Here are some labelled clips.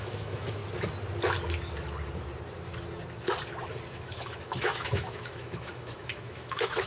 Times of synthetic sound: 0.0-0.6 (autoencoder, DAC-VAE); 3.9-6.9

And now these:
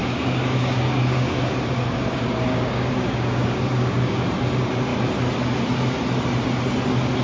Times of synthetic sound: 0.0-4.3 (codec, DAC)

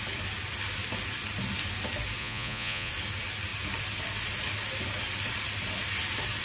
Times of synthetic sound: 2.2-2.9 (vocoder, Vocos)

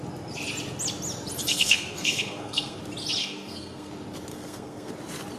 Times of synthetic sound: 1.5-2.8 (codec, SNAC); 3.2-3.9; 4.3-4.9

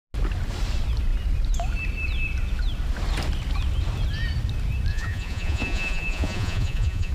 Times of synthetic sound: 4.9-7.1 (vocoder, Vocos)